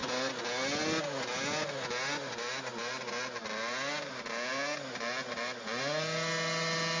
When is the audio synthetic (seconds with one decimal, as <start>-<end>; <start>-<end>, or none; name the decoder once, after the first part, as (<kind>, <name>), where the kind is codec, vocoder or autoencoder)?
none